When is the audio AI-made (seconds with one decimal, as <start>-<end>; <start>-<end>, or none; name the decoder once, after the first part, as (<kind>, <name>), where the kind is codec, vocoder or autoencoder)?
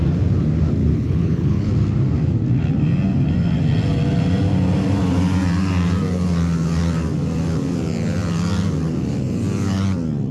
0.8-1.7 (codec, HILCodec)